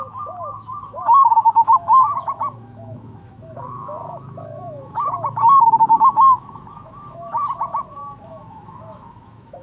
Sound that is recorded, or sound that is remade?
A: remade